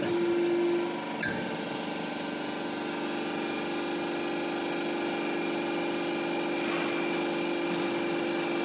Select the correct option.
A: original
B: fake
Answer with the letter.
A